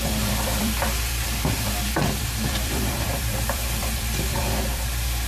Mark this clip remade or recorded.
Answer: remade